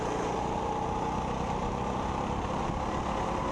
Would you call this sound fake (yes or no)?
no